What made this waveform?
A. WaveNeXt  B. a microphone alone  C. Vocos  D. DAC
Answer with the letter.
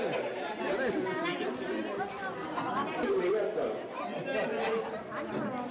B